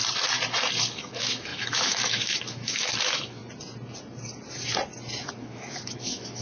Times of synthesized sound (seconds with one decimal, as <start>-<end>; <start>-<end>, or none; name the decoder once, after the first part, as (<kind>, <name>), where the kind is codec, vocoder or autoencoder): 0.8-3.4 (autoencoder, DAC-VAE); 5.3-6.4